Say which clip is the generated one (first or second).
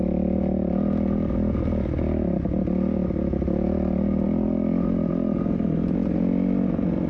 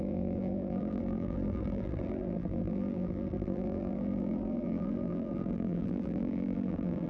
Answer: second